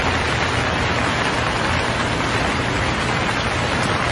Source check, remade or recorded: recorded